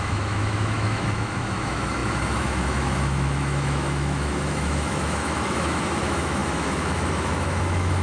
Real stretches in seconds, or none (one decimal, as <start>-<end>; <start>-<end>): none